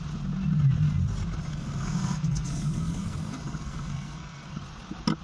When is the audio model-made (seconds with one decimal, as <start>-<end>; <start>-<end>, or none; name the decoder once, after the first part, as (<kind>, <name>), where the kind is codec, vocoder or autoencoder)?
1.5-4.6 (codec, SNAC)